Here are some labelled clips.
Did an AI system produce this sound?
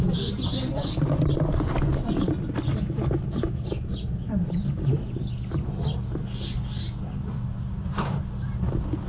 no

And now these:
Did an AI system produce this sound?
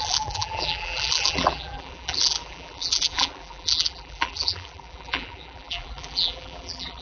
yes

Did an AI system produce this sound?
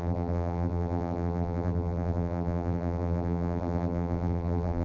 yes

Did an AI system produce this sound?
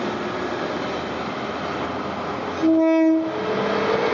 no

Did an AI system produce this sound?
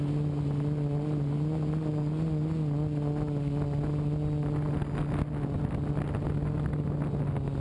no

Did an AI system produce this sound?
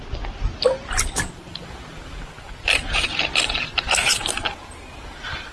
no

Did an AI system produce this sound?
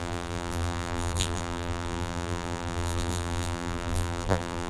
yes